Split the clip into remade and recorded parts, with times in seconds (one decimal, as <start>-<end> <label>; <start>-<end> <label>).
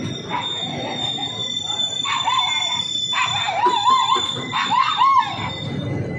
0.0-1.4 recorded; 1.4-2.9 remade; 2.9-4.0 recorded; 4.0-5.2 remade; 5.2-6.2 recorded